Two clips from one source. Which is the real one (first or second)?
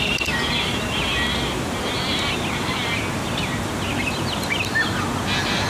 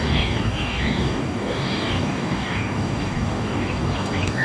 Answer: first